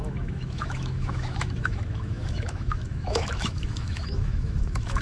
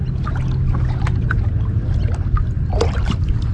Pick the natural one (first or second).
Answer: second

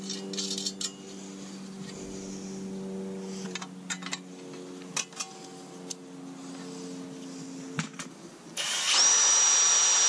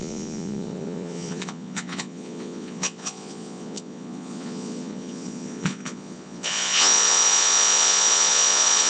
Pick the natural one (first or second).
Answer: first